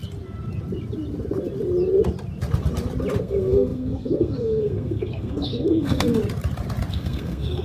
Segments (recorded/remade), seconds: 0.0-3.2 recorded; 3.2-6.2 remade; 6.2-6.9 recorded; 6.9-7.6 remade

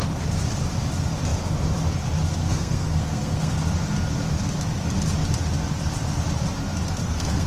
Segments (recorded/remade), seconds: 0.0-2.4 recorded; 2.4-3.6 remade; 3.6-7.0 recorded; 7.0-7.5 remade